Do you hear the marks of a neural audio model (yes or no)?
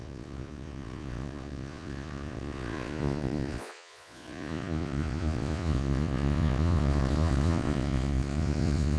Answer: yes